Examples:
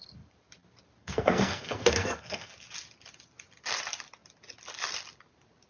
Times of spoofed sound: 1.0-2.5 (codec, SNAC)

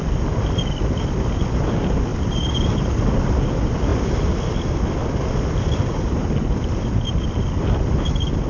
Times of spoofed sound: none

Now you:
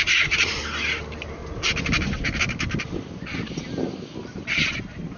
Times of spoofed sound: 0.0-1.4 (vocoder, BigVGAN v2); 4.5-5.2